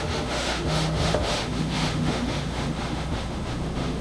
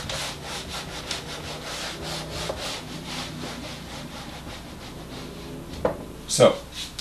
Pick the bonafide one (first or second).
second